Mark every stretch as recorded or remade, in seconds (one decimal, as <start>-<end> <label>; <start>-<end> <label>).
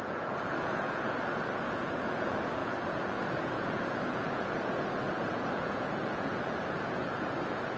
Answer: 0.0-7.8 remade